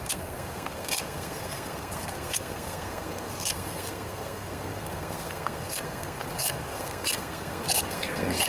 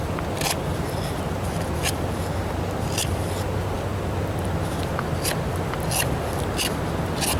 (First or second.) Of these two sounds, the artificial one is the first